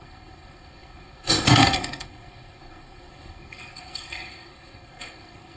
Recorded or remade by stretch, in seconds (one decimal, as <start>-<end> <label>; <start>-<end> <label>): 0.0-5.6 remade